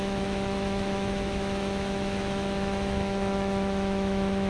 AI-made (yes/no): yes